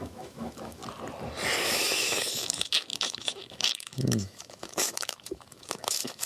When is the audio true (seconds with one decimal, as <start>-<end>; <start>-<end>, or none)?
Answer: 0.8-1.6

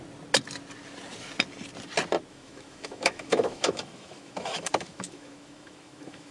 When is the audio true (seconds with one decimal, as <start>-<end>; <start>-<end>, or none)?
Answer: 0.0-2.3

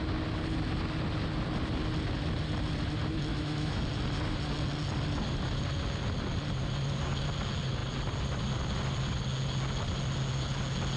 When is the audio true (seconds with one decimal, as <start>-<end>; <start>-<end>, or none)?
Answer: 0.0-3.3; 3.8-11.0

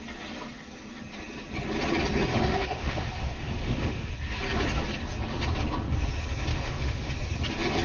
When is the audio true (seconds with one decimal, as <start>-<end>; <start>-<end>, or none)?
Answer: 0.0-2.3; 4.1-6.5; 7.1-7.8

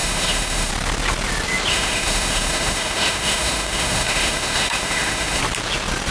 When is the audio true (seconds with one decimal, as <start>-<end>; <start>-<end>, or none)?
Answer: 0.7-1.7; 5.4-6.1

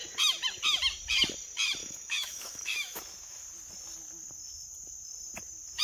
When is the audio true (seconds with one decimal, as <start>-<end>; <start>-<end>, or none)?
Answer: 0.0-1.8; 3.4-5.8